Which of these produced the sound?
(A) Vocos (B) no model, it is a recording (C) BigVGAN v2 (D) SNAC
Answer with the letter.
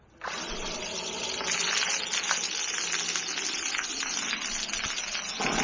B